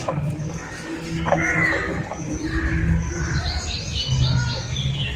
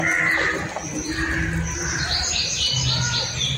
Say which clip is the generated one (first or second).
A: first